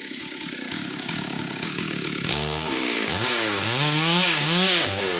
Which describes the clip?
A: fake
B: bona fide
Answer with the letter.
A